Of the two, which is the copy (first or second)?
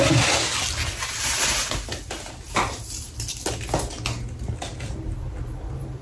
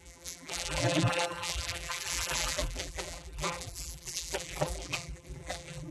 second